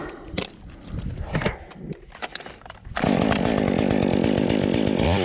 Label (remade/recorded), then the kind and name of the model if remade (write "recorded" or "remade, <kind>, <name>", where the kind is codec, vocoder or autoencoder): recorded